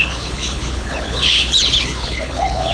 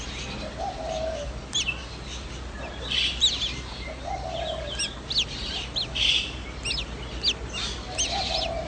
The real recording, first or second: second